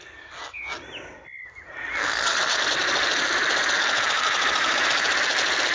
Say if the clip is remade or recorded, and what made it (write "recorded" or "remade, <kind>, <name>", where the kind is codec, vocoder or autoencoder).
recorded